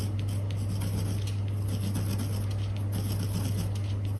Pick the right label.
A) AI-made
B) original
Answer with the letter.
B